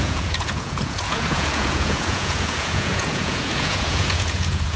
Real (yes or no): no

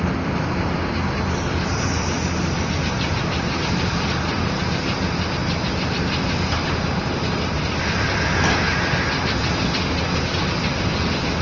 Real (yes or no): yes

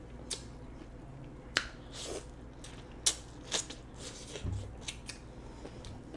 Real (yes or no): yes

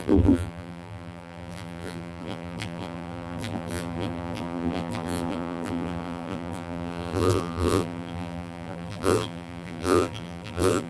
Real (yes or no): no